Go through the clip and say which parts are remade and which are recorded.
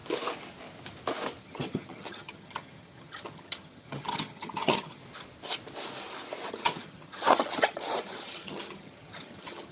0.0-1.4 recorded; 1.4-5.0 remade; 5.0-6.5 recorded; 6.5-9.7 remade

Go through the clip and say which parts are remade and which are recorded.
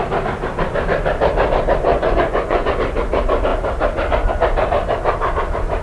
0.0-1.9 recorded; 1.9-2.7 remade; 2.7-5.8 recorded